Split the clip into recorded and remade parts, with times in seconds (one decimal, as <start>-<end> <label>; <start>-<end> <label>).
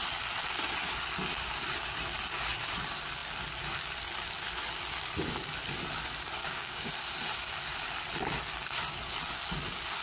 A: 0.0-6.4 recorded; 6.4-6.9 remade; 6.9-10.0 recorded